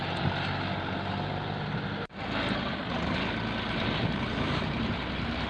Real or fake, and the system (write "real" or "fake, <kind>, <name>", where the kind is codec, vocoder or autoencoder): real